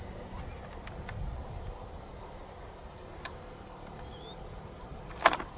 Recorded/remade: recorded